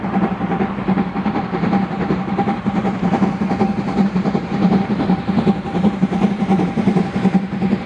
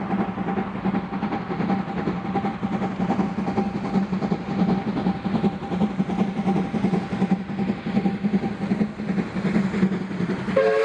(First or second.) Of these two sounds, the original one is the second